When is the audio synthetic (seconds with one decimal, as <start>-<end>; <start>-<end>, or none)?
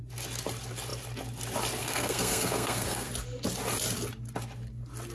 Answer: 1.8-3.1